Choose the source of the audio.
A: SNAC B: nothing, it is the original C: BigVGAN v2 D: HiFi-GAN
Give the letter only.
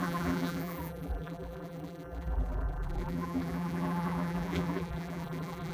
C